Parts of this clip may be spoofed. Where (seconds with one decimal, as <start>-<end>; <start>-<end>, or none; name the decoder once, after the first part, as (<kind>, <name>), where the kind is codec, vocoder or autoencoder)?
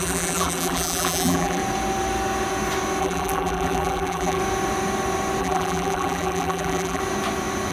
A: 0.0-1.6 (vocoder, BigVGAN v2); 3.0-4.4; 5.4-7.0